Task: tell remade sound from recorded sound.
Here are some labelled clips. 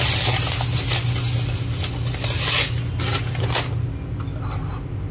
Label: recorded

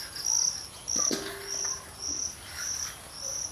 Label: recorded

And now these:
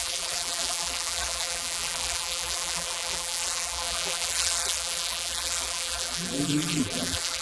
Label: remade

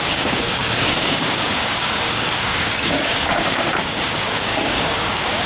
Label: remade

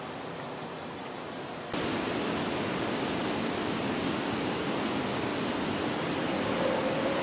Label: recorded